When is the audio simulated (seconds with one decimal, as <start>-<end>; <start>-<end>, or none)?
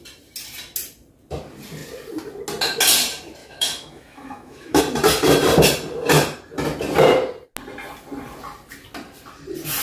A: 3.4-4.8